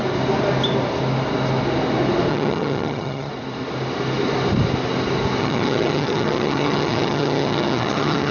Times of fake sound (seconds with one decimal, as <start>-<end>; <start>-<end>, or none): 2.3-3.3; 5.4-8.3